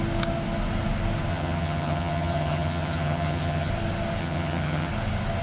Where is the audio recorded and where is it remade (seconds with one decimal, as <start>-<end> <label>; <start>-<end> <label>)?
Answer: 0.0-1.3 recorded; 1.3-3.7 remade; 3.7-4.2 recorded; 4.2-4.9 remade; 4.9-5.4 recorded